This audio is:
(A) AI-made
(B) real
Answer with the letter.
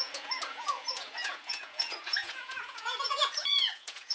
A